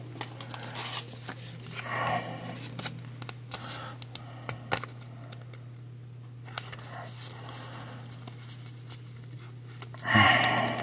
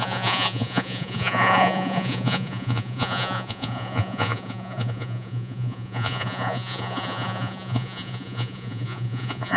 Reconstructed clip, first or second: second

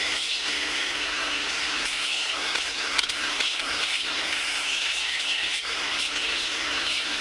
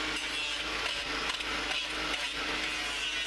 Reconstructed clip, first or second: first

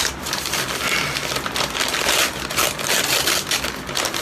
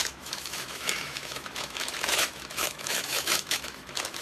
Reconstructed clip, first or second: second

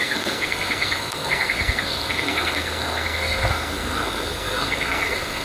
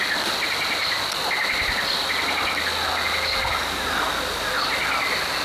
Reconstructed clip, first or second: first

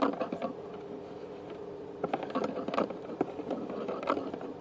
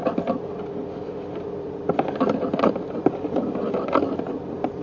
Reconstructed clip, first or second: first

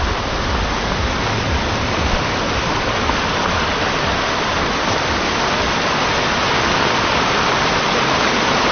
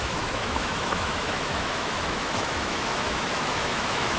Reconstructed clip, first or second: second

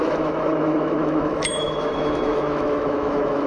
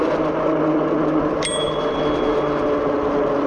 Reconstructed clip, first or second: first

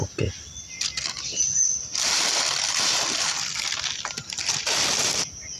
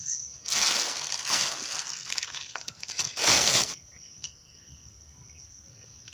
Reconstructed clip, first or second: second